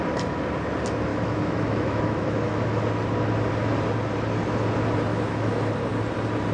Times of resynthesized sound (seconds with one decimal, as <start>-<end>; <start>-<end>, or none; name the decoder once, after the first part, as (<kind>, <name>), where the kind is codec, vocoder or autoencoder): 1.1-2.8 (autoencoder, DAC-VAE); 5.1-5.7

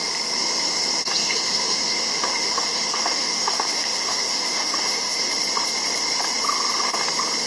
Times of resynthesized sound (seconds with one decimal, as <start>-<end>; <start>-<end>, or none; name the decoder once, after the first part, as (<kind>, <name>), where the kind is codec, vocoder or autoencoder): 1.2-5.3 (autoencoder, DAC-VAE)